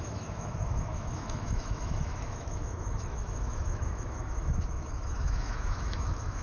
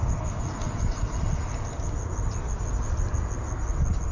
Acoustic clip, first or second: second